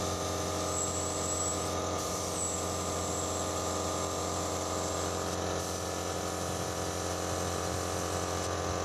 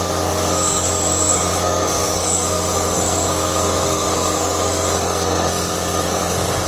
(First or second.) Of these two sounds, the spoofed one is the second